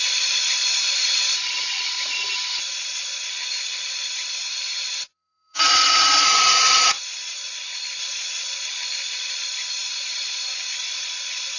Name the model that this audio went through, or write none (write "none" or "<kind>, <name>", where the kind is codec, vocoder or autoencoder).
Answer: vocoder, Vocos